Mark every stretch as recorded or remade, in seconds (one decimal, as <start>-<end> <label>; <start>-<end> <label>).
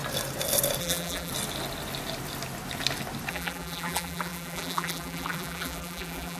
0.0-0.8 recorded; 0.8-1.3 remade; 1.3-3.3 recorded; 3.3-6.4 remade